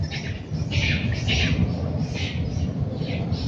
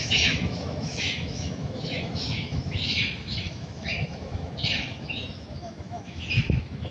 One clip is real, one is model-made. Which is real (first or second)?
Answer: first